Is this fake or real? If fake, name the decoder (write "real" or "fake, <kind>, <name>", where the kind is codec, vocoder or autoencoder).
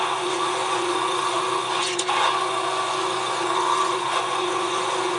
fake, vocoder, Vocos